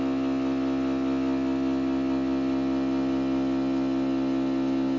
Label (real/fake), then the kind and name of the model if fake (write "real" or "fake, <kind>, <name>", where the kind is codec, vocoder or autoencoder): real